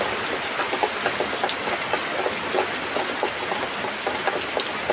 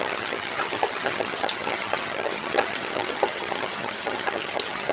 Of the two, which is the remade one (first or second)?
second